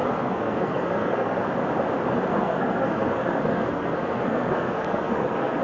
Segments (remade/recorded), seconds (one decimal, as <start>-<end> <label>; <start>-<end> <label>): 0.0-1.4 remade; 1.4-2.3 recorded; 2.3-5.6 remade